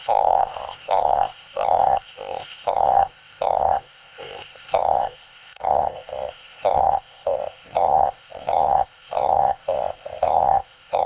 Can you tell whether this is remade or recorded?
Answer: remade